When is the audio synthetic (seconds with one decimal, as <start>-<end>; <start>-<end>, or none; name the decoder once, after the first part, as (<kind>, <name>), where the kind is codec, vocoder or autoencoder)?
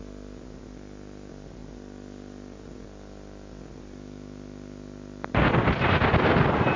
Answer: none